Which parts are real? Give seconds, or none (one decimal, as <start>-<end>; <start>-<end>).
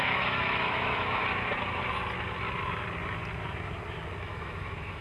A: 1.2-4.2